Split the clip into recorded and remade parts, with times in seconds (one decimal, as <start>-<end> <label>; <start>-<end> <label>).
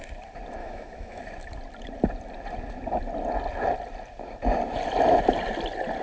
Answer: 0.0-0.6 recorded; 0.6-1.2 remade; 1.2-6.0 recorded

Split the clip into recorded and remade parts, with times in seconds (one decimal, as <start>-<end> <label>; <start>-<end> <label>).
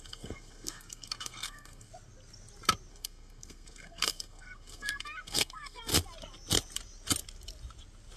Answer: 0.0-1.9 remade; 1.9-2.9 recorded; 2.9-5.9 remade; 5.9-8.2 recorded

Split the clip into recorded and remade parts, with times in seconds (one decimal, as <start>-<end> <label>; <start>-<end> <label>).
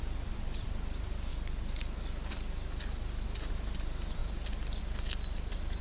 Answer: 0.0-1.3 remade; 1.3-3.5 recorded; 3.5-4.2 remade; 4.2-4.8 recorded; 4.8-5.8 remade